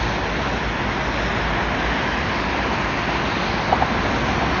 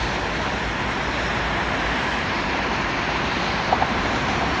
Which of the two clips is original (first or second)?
first